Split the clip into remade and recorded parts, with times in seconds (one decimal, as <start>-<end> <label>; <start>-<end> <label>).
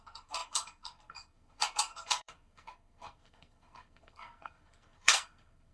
0.0-5.7 remade